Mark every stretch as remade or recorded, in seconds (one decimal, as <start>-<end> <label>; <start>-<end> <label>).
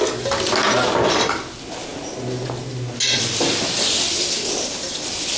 0.0-5.4 recorded